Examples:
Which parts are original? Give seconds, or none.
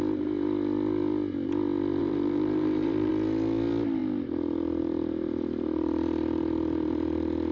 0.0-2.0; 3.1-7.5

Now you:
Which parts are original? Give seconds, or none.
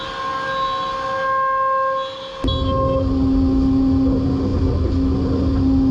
0.0-5.9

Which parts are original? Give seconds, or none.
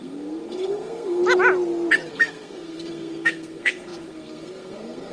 1.2-2.1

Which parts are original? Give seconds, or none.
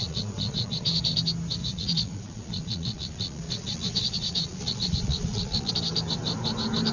1.0-1.6; 5.7-6.9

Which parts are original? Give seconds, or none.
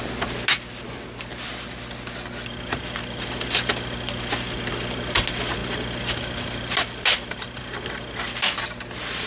0.0-9.3